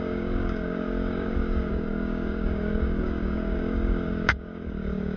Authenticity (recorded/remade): remade